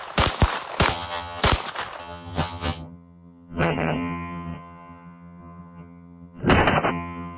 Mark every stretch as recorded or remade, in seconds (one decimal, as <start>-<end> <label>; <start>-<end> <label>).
0.0-0.9 recorded; 0.9-1.4 remade; 1.4-2.0 recorded; 2.0-6.4 remade; 6.4-6.9 recorded; 6.9-7.4 remade